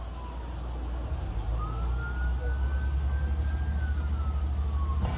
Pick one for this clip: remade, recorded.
recorded